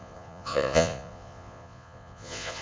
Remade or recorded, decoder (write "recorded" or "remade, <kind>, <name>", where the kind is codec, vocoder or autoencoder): remade, vocoder, Vocos